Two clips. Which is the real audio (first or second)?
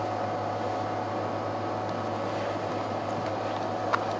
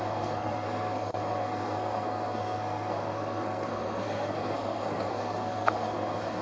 first